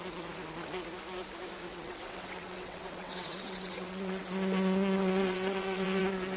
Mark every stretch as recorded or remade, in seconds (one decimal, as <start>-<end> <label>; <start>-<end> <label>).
0.0-1.7 recorded; 1.7-4.2 remade; 4.2-5.0 recorded; 5.0-6.0 remade; 6.0-6.4 recorded